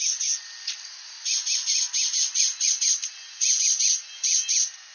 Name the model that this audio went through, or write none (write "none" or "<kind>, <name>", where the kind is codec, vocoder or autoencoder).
none